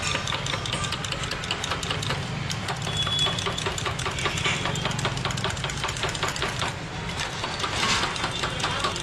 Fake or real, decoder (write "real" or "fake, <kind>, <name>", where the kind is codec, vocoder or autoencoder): real